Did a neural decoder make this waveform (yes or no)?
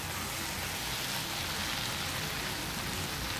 no